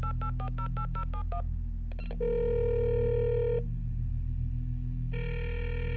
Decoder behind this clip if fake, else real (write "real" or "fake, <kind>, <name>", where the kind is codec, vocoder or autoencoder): real